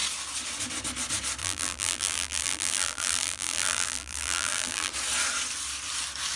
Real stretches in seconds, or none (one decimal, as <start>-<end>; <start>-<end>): 0.0-1.4; 4.9-6.4